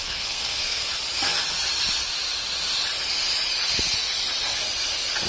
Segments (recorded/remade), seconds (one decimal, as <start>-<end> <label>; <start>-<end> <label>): 0.0-0.9 remade; 0.9-5.3 recorded